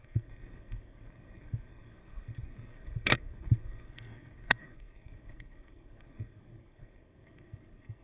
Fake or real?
fake